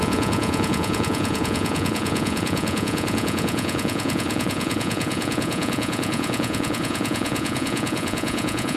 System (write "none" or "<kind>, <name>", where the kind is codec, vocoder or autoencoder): vocoder, Vocos